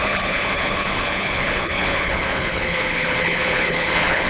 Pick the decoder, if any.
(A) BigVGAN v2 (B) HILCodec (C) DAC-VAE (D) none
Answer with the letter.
B